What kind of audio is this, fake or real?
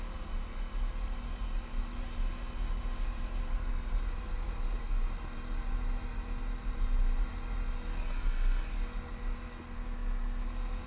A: real